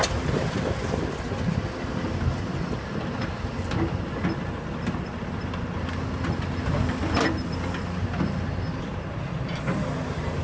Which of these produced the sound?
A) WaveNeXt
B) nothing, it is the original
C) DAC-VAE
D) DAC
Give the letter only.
B